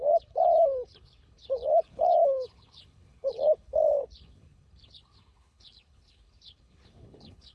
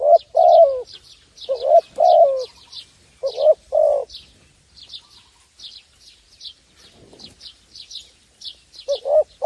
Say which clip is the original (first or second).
second